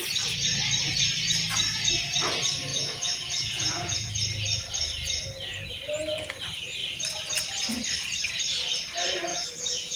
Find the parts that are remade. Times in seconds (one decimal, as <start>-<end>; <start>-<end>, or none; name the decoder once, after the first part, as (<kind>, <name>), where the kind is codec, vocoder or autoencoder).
2.7-4.1 (vocoder, Vocos); 9.3-10.0

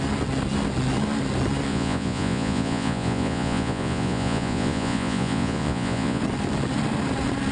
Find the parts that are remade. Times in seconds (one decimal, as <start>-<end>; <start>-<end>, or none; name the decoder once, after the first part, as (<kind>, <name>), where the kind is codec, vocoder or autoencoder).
1.7-6.2 (vocoder, Vocos)

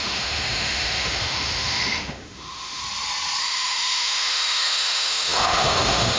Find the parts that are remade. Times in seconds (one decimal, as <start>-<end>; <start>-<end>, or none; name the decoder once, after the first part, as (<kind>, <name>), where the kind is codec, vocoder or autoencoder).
0.0-2.8 (autoencoder, DAC-VAE); 3.4-6.2

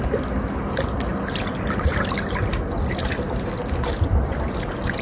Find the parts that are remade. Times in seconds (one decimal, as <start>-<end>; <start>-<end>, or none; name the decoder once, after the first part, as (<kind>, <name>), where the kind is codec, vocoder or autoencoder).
none